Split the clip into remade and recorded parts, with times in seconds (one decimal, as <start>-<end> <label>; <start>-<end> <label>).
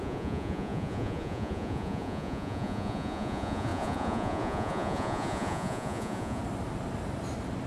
0.0-6.4 remade; 6.4-7.7 recorded